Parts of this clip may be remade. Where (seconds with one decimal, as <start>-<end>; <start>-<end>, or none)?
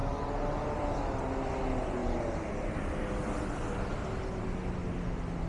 none